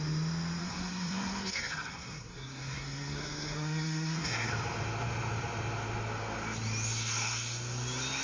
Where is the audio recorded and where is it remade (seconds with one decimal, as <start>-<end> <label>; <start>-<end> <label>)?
0.0-0.6 recorded; 0.6-4.5 remade; 4.5-8.2 recorded

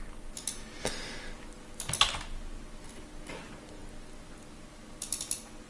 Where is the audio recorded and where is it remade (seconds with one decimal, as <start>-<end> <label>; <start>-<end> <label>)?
0.0-5.7 recorded

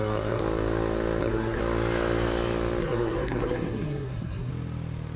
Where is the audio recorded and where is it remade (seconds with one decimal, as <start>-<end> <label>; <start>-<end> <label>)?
0.0-0.4 remade; 0.4-1.2 recorded; 1.2-1.6 remade; 1.6-2.8 recorded; 2.8-4.5 remade; 4.5-5.2 recorded

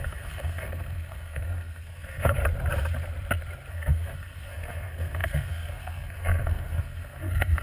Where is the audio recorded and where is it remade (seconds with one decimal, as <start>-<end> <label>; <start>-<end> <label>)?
0.0-2.4 remade; 2.4-3.7 recorded; 3.7-7.6 remade

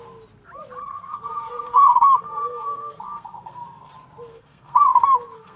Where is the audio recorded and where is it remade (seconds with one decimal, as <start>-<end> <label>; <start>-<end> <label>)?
0.0-0.9 recorded; 0.9-3.9 remade; 3.9-4.3 recorded; 4.3-5.6 remade

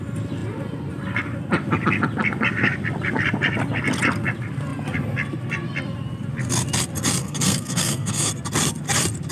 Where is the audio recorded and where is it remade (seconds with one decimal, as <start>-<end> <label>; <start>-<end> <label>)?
0.0-7.2 recorded; 7.2-8.3 remade; 8.3-9.3 recorded

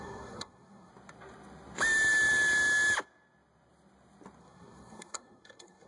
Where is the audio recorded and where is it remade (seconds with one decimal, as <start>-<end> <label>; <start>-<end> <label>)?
0.0-0.9 remade; 0.9-4.4 recorded; 4.4-5.9 remade